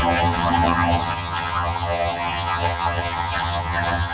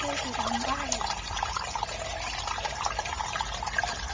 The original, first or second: second